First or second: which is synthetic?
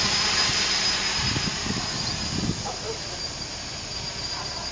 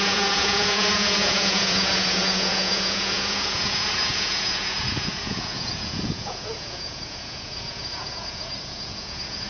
second